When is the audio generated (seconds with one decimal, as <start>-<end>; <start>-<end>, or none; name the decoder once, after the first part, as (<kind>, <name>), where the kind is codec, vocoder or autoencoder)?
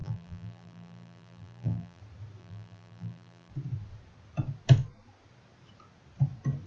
0.0-2.0 (vocoder, BigVGAN v2); 2.4-3.5